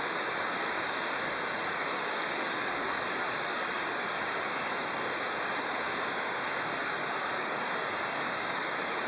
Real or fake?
fake